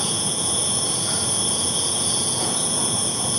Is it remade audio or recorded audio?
remade